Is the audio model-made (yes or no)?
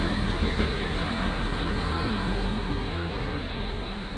yes